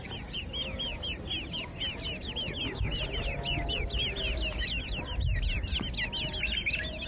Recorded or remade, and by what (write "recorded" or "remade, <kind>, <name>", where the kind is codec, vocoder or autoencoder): recorded